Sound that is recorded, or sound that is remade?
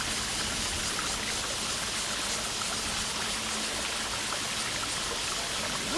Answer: recorded